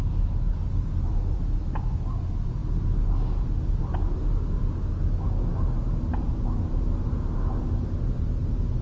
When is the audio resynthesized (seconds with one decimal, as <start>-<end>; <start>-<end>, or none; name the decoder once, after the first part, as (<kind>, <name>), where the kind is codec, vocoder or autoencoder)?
none